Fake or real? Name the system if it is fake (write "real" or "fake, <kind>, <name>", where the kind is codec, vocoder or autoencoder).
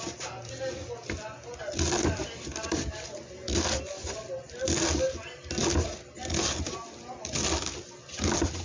real